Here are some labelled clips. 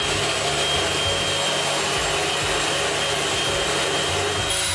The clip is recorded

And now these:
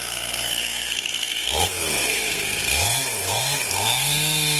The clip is remade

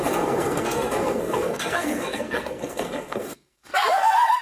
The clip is remade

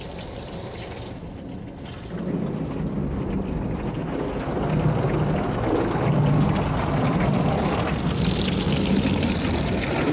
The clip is recorded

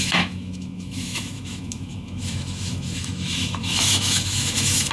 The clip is remade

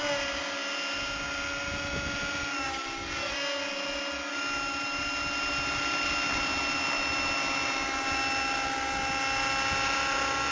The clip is recorded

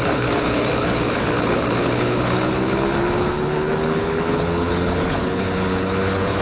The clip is remade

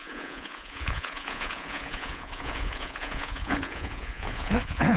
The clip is remade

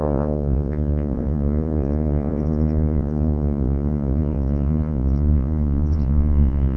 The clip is remade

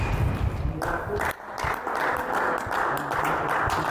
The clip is recorded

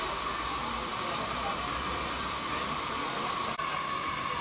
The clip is recorded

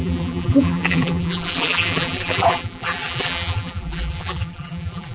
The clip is remade